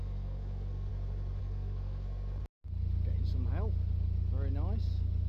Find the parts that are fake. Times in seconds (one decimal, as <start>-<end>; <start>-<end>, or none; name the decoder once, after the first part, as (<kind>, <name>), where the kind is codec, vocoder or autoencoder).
0.0-0.9 (codec, SNAC); 1.4-2.4